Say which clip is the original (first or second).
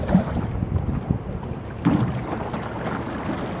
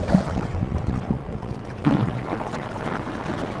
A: first